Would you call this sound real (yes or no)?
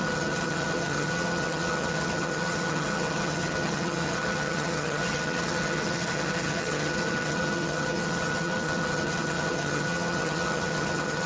no